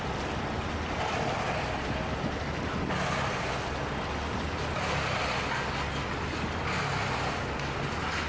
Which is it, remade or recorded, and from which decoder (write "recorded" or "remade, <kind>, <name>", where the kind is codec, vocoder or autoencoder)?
recorded